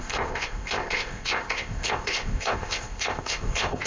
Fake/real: fake